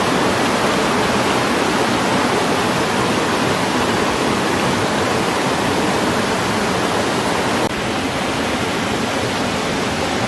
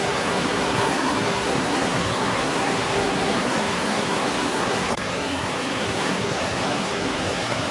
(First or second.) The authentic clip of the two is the first